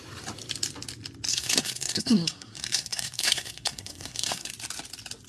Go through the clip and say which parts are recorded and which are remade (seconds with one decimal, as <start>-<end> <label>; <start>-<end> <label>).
0.0-1.3 recorded; 1.3-4.5 remade; 4.5-5.3 recorded